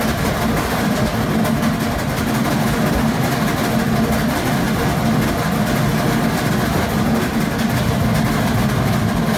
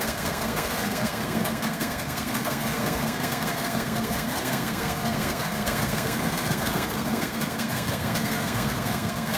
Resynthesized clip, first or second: second